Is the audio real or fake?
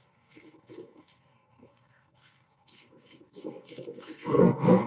fake